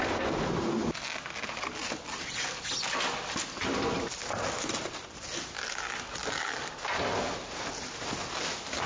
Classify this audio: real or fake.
real